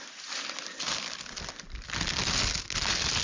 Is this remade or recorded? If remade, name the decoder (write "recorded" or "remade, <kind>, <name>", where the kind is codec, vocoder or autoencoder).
recorded